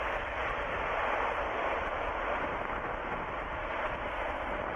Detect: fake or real real